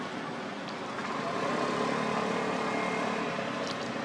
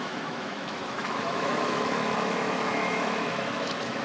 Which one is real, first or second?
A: first